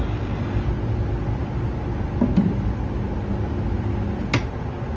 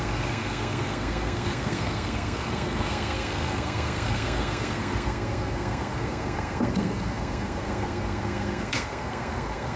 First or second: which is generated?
second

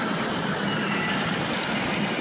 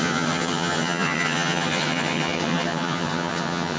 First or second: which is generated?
second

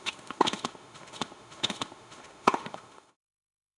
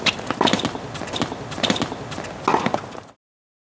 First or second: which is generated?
first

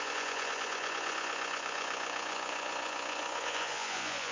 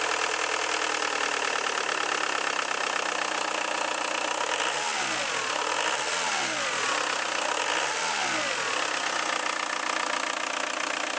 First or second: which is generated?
first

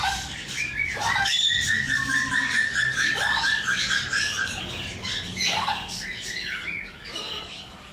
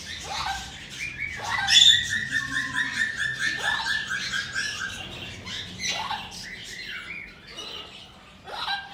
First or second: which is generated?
first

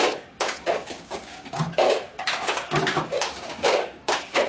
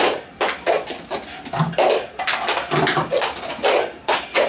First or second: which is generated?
first